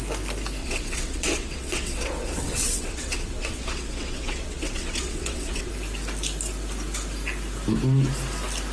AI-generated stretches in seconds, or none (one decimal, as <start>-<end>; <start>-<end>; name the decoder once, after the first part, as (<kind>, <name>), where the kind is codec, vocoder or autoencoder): 0.6-5.7 (vocoder, WaveNeXt)